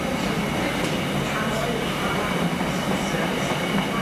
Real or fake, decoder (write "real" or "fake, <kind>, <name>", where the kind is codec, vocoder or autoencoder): real